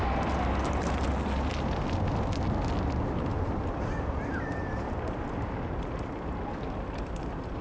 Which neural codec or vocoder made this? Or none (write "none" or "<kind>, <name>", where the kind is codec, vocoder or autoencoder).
none